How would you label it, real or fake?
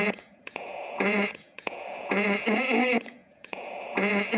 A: fake